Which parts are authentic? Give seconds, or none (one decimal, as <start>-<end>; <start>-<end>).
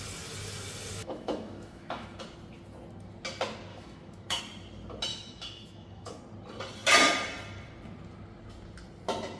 0.0-1.0; 2.2-3.7; 4.4-5.1; 6.2-9.4